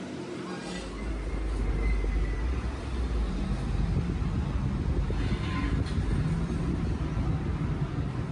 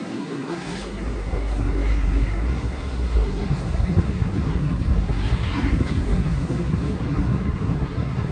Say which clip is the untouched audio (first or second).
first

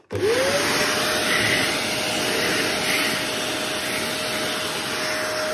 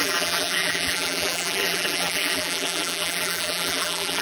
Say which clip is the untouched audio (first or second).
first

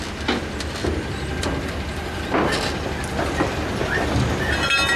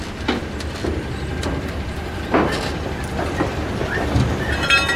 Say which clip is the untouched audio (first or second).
first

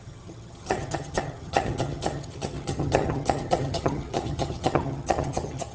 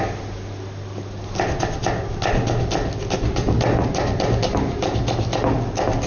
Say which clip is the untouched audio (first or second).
second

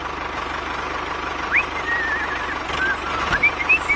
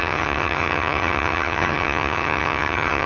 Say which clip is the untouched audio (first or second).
first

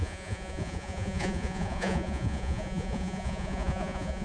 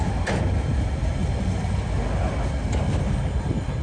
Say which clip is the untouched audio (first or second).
second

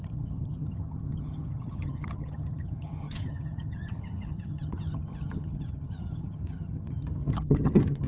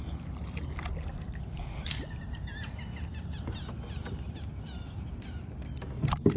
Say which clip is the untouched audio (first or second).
second